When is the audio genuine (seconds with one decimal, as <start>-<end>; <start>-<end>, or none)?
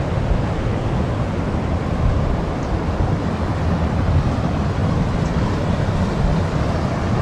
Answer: 0.0-7.2